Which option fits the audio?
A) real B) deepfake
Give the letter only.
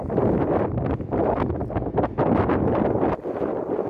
A